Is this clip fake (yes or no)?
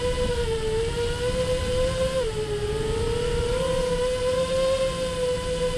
yes